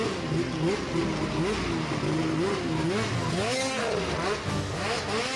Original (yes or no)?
yes